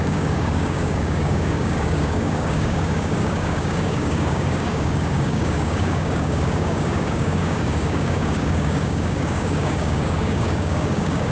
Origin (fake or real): fake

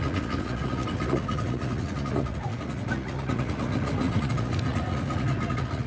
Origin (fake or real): fake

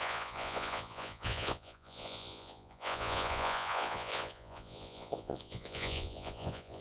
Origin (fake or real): fake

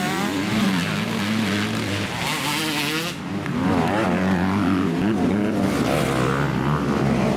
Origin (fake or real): real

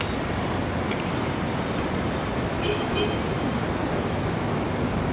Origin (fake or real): real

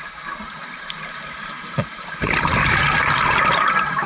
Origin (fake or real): real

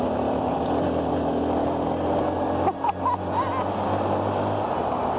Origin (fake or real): real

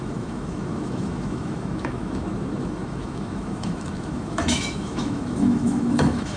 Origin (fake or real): fake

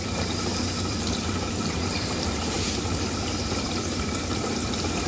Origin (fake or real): fake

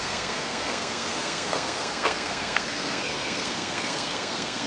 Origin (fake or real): fake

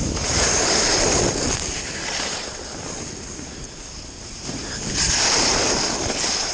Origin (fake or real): real